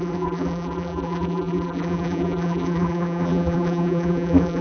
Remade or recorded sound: remade